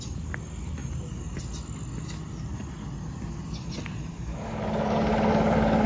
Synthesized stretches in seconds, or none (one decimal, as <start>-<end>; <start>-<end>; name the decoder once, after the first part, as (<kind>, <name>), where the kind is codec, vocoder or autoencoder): 4.1-5.9 (codec, DAC)